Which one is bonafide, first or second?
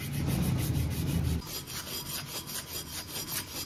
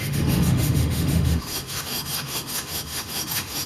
first